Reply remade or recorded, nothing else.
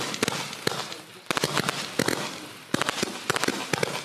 recorded